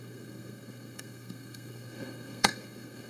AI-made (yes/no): yes